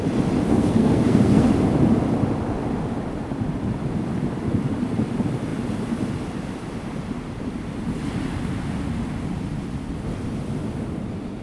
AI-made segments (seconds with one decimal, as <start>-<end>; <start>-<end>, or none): 0.5-1.5